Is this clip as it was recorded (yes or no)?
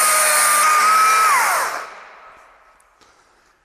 yes